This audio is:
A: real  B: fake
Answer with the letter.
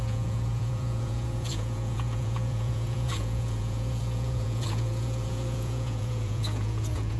B